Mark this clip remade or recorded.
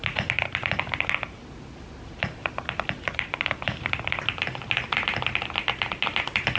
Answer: recorded